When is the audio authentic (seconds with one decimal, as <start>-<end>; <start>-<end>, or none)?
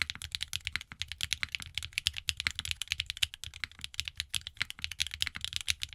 0.0-5.9